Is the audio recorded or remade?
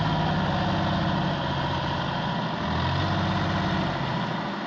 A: recorded